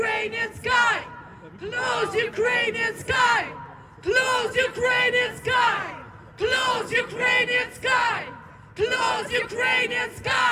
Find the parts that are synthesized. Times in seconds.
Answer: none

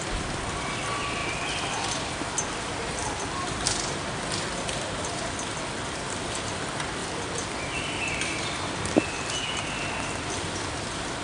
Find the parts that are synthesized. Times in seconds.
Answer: 1.2-6.2 (vocoder, BigVGAN v2); 7.0-8.0

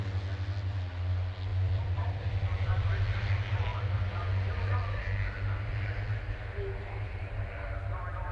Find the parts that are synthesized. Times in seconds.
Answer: 1.5-2.9 (vocoder, BigVGAN v2)